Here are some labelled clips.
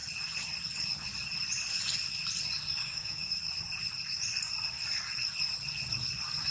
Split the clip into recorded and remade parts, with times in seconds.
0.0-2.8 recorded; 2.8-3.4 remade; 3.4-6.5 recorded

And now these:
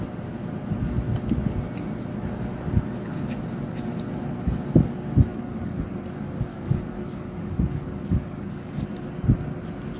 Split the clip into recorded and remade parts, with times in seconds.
0.0-5.3 recorded; 5.3-5.8 remade; 5.8-6.5 recorded; 6.5-8.7 remade; 8.7-10.0 recorded

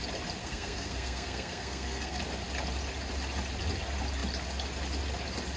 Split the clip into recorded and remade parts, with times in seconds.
0.0-0.4 recorded; 0.4-2.2 remade; 2.2-5.6 recorded

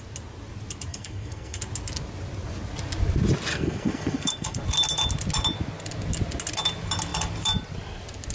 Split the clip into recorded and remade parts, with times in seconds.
0.0-0.9 recorded; 0.9-1.6 remade; 1.6-3.5 recorded; 3.5-4.6 remade; 4.6-8.3 recorded

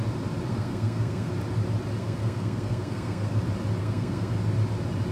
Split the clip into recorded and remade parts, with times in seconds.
0.0-0.5 recorded; 0.5-1.3 remade; 1.3-2.0 recorded; 2.0-3.4 remade; 3.4-3.8 recorded; 3.8-4.3 remade; 4.3-5.1 recorded

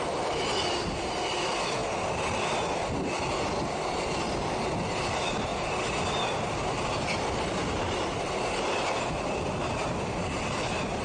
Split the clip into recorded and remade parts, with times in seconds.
0.0-11.0 recorded

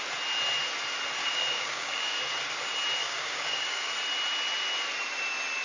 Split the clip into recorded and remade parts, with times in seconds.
0.0-1.2 recorded; 1.2-2.2 remade; 2.2-3.0 recorded; 3.0-3.9 remade; 3.9-5.6 recorded

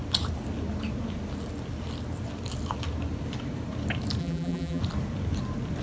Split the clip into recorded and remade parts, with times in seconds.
0.0-4.2 recorded; 4.2-4.8 remade; 4.8-5.8 recorded